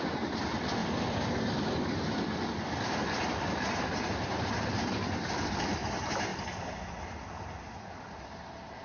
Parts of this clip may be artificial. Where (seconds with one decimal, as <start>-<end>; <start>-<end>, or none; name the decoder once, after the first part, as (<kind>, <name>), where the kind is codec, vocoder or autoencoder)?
none